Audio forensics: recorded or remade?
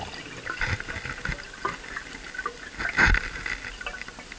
recorded